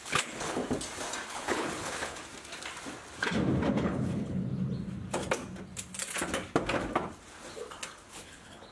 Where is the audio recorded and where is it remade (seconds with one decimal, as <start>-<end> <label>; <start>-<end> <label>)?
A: 0.0-0.6 remade; 0.6-1.3 recorded; 1.3-2.2 remade; 2.2-3.7 recorded; 3.7-4.5 remade; 4.5-8.1 recorded; 8.1-8.7 remade